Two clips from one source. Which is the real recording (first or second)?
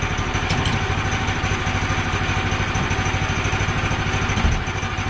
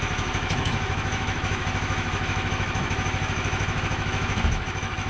first